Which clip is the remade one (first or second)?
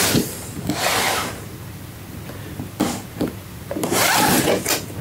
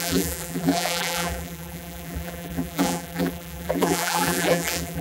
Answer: second